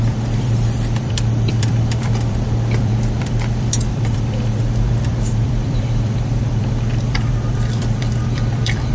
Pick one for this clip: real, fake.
fake